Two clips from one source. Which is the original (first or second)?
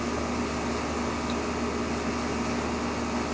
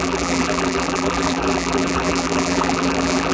first